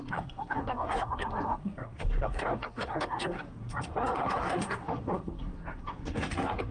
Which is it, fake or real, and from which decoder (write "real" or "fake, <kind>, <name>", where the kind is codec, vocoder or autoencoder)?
fake, codec, SNAC